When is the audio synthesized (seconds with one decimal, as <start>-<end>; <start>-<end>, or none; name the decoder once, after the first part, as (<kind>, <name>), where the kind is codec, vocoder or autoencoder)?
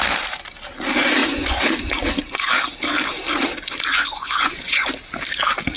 1.2-1.8 (vocoder, Vocos); 3.9-4.9